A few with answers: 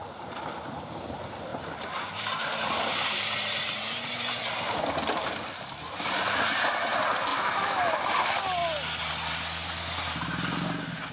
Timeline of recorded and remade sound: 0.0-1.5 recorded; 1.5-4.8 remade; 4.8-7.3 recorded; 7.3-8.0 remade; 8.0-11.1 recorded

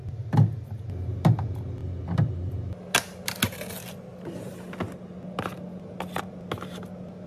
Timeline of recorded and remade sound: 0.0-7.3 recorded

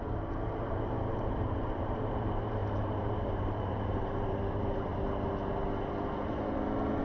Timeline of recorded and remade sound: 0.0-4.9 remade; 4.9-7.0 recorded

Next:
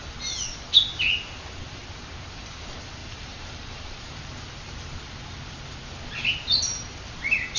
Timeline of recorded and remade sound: 0.0-3.0 recorded; 3.0-4.2 remade; 4.2-7.6 recorded

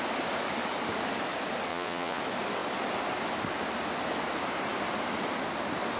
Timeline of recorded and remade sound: 0.0-1.7 recorded; 1.7-2.2 remade; 2.2-6.0 recorded